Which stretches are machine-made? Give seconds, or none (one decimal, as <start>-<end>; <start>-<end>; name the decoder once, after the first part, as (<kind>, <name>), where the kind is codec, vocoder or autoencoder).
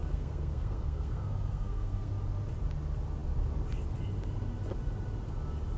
0.0-2.1 (codec, SNAC)